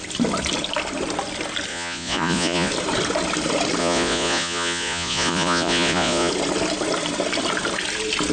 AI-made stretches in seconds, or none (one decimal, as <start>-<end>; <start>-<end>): 1.7-2.7; 3.8-6.3